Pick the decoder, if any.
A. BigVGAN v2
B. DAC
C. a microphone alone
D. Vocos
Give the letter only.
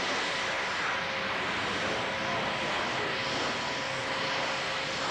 C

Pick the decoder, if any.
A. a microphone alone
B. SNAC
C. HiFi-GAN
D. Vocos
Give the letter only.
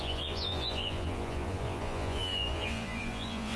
D